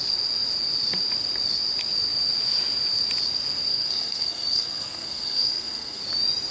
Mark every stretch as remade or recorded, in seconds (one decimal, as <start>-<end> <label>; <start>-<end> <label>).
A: 0.0-3.7 recorded; 3.7-6.0 remade; 6.0-6.5 recorded